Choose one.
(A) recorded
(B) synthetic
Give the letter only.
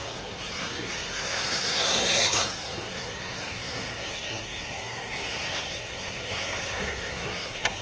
B